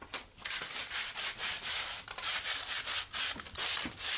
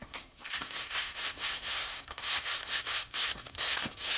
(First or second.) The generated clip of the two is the second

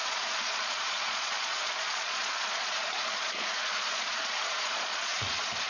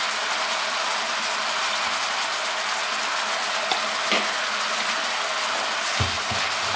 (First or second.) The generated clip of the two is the first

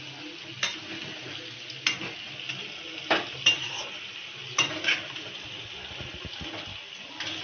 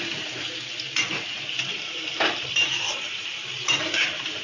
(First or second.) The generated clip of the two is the second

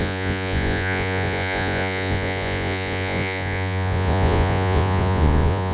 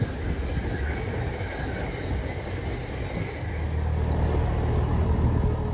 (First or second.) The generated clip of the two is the first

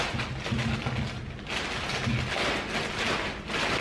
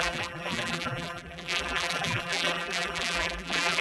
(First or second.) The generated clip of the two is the second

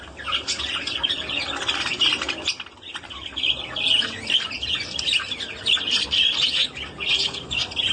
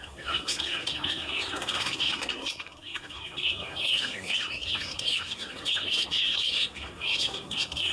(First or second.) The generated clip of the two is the second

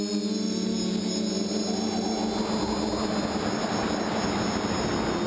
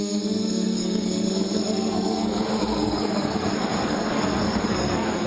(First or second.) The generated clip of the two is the second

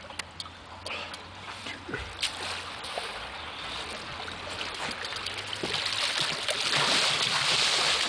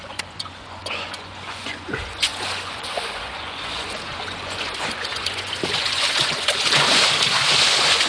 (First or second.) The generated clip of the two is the second